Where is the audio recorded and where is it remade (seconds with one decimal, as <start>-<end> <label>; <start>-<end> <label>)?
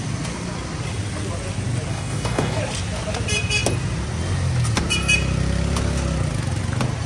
0.0-1.9 recorded; 1.9-2.6 remade; 2.6-7.1 recorded